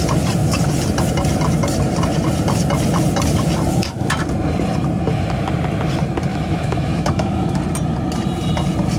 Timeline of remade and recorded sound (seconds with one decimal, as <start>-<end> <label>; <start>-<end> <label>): 0.0-6.3 recorded; 6.3-7.6 remade; 7.6-9.0 recorded